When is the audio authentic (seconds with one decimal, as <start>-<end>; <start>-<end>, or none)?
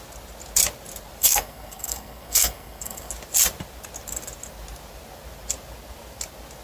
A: 0.0-1.2; 3.1-6.6